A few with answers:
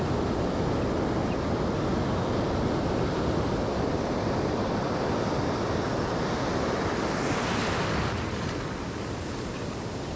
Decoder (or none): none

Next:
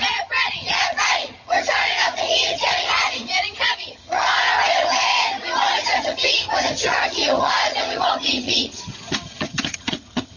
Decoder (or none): vocoder, HiFi-GAN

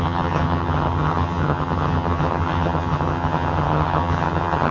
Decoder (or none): vocoder, HiFi-GAN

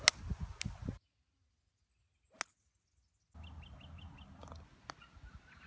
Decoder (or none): none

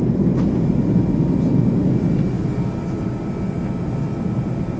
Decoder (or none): none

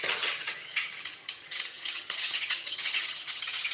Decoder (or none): vocoder, HiFi-GAN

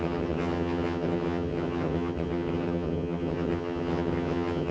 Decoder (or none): vocoder, HiFi-GAN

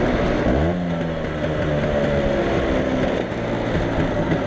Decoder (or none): none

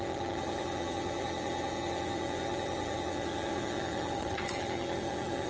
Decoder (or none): vocoder, HiFi-GAN